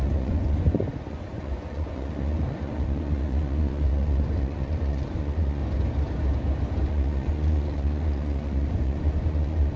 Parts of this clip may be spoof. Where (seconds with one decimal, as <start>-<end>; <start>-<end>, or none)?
0.0-5.6; 6.9-9.8